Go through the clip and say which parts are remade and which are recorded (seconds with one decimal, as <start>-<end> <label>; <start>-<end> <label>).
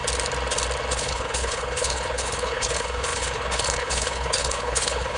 0.0-0.9 recorded; 0.9-5.2 remade